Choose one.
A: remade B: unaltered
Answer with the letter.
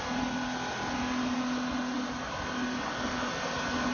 B